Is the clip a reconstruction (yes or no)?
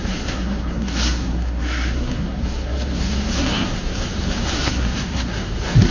yes